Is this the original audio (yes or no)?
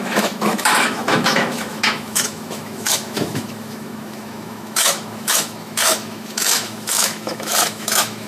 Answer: no